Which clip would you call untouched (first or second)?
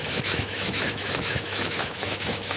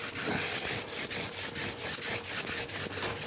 second